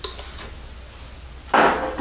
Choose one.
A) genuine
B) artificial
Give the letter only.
A